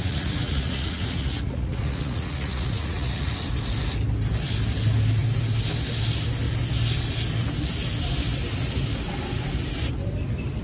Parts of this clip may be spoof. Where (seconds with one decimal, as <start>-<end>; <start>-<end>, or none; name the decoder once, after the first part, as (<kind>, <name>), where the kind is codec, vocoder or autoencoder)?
0.0-3.3 (vocoder, Vocos)

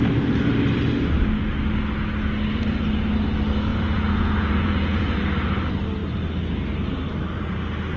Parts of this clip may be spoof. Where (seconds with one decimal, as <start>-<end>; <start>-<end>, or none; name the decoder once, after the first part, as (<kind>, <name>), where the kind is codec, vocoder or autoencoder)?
3.7-5.2 (vocoder, Vocos)

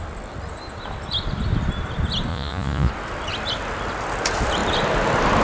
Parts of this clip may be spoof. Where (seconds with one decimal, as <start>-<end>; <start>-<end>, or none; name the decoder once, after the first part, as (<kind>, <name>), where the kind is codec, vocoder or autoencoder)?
2.3-2.9 (vocoder, Vocos)

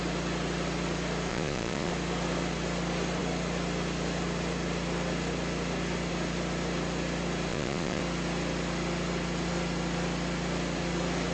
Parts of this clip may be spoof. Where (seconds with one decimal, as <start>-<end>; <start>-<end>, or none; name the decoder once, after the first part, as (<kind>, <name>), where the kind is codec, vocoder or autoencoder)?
1.3-1.9 (vocoder, Vocos); 7.5-8.0